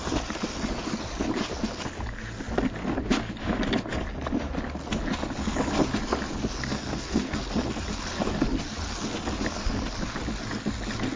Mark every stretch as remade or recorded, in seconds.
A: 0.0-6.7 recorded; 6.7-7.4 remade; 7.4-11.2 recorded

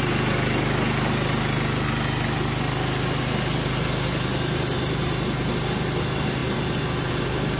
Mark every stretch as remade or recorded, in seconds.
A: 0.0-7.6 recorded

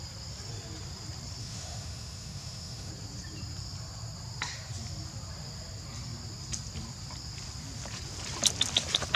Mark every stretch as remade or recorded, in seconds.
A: 0.0-1.4 recorded; 1.4-2.9 remade; 2.9-9.2 recorded

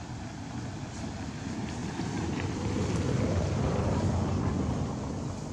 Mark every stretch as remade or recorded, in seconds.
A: 0.0-5.5 recorded

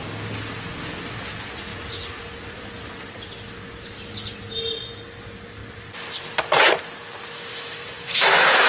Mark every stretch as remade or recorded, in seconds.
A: 0.0-7.5 recorded; 7.5-8.7 remade

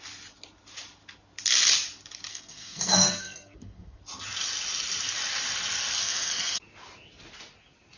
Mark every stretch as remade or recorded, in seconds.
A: 0.0-2.3 recorded; 2.3-4.0 remade; 4.0-6.0 recorded; 6.0-6.6 remade; 6.6-8.0 recorded

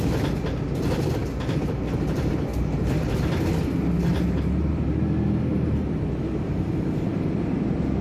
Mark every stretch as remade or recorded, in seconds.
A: 0.0-4.1 recorded; 4.1-4.9 remade; 4.9-5.5 recorded; 5.5-8.0 remade